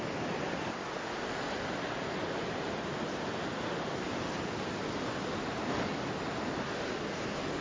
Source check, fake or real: real